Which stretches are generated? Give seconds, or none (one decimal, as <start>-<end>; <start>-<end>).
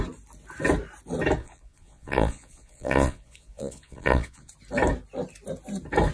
1.4-4.5